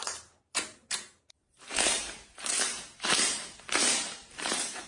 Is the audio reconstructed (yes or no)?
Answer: yes